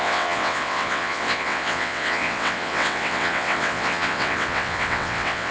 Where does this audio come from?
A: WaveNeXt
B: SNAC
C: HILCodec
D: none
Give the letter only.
A